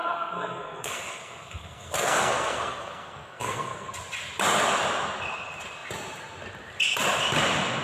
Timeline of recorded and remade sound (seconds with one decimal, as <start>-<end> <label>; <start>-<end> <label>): 0.0-3.9 remade; 3.9-7.8 recorded